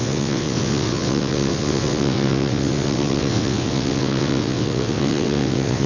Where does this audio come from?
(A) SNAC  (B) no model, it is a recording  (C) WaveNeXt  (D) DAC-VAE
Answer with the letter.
C